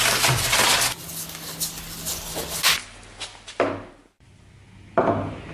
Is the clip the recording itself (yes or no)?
yes